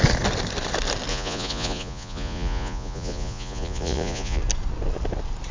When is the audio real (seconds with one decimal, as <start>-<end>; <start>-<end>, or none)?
0.0-1.1; 4.4-5.5